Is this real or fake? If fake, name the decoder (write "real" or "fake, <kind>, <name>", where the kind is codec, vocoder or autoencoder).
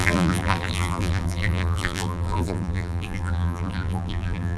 fake, vocoder, BigVGAN v2